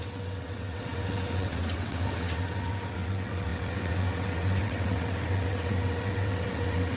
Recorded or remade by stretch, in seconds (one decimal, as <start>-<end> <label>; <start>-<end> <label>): 0.0-7.0 remade